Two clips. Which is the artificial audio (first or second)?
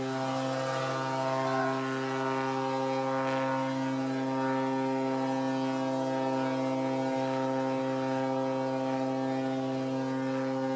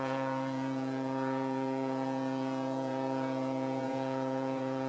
second